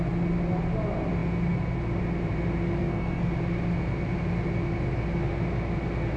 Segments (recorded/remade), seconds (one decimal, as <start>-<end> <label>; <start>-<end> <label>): 0.0-2.8 recorded; 2.8-3.3 remade; 3.3-6.2 recorded